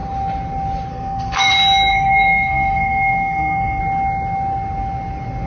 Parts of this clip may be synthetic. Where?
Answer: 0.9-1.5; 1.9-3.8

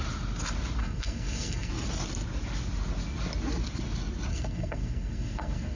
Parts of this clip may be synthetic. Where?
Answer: 0.8-1.7; 4.3-5.8

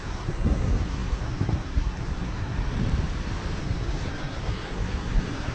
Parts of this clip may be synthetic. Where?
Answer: 0.0-2.6; 3.6-5.5

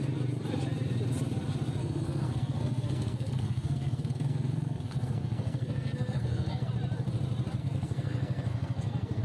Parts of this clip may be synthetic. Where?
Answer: 1.8-6.7; 7.6-9.2